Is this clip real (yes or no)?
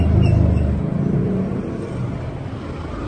yes